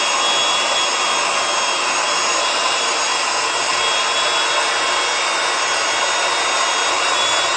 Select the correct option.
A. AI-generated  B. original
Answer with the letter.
B